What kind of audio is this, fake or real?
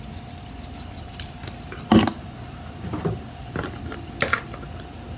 real